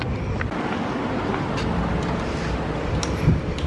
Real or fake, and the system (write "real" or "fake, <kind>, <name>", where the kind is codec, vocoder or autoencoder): real